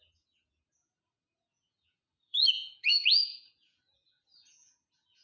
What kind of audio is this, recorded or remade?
remade